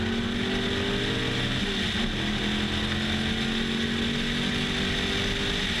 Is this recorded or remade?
recorded